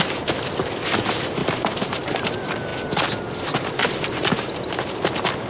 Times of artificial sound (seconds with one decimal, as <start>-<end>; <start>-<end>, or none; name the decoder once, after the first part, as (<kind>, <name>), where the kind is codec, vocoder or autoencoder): 1.4-2.3 (vocoder, BigVGAN v2); 3.8-5.0